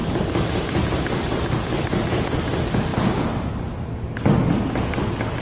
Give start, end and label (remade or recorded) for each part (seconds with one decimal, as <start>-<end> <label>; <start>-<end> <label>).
0.0-5.4 recorded

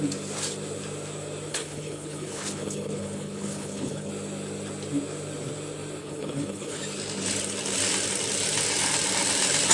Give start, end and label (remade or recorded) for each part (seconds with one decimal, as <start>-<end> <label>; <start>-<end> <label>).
0.0-1.5 recorded; 1.5-4.1 remade; 4.1-6.0 recorded; 6.0-6.8 remade; 6.8-9.7 recorded

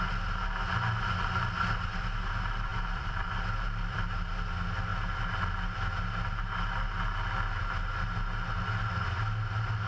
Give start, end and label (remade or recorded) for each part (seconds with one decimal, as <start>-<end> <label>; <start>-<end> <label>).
0.0-2.7 recorded; 2.7-4.1 remade; 4.1-9.9 recorded

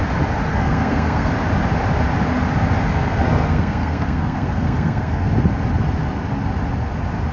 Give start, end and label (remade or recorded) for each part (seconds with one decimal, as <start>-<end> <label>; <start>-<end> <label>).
0.0-0.5 recorded; 0.5-1.3 remade; 1.3-2.9 recorded; 2.9-5.3 remade; 5.3-7.3 recorded

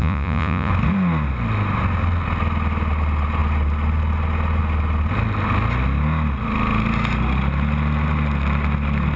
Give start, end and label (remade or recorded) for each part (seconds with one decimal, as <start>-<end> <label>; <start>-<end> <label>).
0.0-0.7 remade; 0.7-9.2 recorded

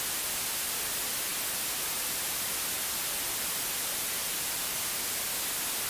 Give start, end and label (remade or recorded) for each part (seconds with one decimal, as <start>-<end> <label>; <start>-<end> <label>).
0.0-4.2 recorded; 4.2-4.7 remade; 4.7-5.9 recorded

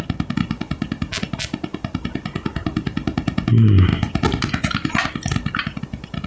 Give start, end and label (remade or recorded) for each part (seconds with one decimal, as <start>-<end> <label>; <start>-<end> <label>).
0.0-6.3 recorded

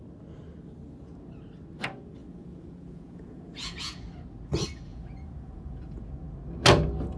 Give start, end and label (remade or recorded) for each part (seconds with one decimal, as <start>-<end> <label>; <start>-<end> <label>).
0.0-2.2 recorded; 2.2-4.0 remade; 4.0-4.9 recorded; 4.9-6.1 remade; 6.1-7.2 recorded